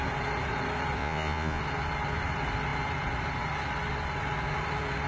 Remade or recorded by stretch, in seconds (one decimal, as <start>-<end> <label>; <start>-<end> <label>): 0.0-1.0 recorded; 1.0-1.6 remade; 1.6-5.1 recorded